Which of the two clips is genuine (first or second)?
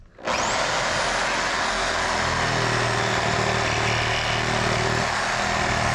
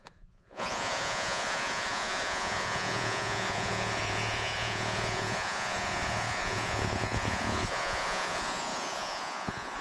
first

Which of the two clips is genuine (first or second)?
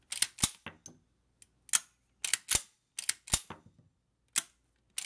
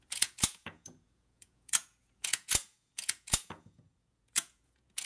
first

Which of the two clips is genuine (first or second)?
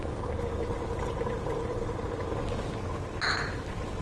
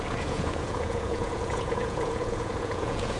first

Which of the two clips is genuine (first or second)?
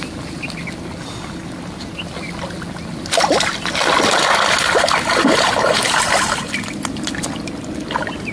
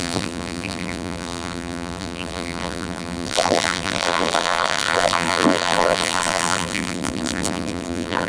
first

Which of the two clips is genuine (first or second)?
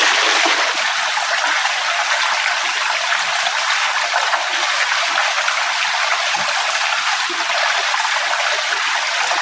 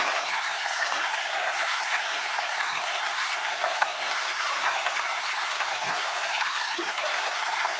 first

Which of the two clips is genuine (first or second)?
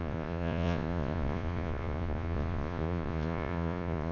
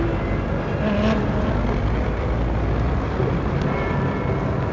second